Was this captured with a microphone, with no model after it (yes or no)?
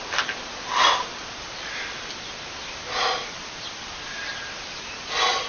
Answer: yes